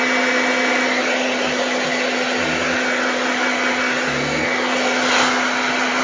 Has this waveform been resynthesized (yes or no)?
no